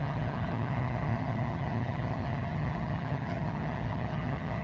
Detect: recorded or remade remade